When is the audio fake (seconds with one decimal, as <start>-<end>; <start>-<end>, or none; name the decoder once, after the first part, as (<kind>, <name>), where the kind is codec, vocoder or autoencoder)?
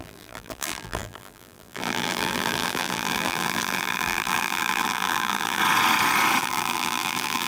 0.0-5.6 (vocoder, BigVGAN v2); 6.4-7.5